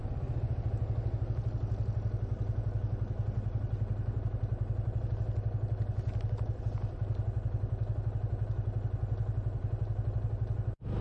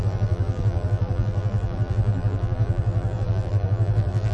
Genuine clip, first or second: first